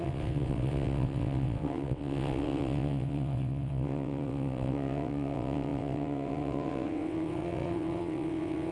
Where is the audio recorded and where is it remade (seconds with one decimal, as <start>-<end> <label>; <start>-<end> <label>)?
0.0-8.7 remade